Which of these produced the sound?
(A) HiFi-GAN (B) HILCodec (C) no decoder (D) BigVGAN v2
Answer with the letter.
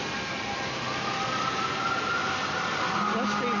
C